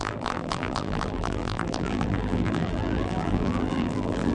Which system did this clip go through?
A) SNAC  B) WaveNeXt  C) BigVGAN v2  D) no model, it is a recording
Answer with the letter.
C